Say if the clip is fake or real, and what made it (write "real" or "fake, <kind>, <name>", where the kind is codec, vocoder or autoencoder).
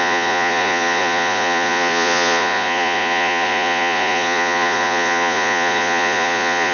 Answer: fake, vocoder, Vocos